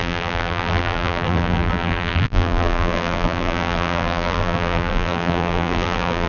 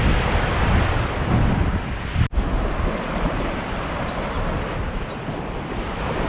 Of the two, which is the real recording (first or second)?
second